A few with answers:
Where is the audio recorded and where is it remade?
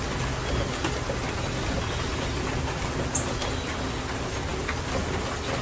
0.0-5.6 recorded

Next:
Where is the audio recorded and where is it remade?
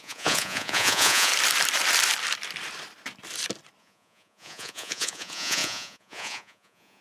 0.0-1.3 remade; 1.3-3.8 recorded; 3.8-7.0 remade